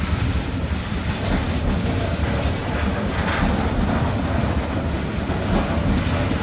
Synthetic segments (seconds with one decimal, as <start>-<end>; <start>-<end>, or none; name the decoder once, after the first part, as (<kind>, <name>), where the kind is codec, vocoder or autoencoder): none